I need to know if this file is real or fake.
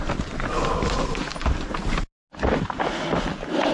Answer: real